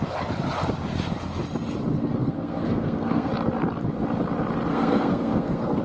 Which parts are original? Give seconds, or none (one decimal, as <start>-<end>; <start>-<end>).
0.0-2.2; 3.3-4.7